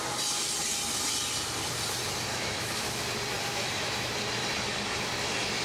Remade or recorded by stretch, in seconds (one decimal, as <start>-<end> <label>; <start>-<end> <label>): 0.0-2.3 recorded; 2.3-3.0 remade; 3.0-3.5 recorded; 3.5-4.1 remade; 4.1-5.6 recorded